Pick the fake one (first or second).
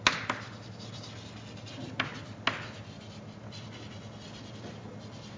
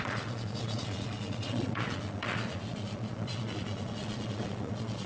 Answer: second